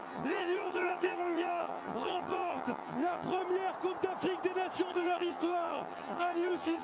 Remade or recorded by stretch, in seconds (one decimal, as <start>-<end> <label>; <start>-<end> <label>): 0.0-3.4 remade; 3.4-4.9 recorded; 4.9-6.8 remade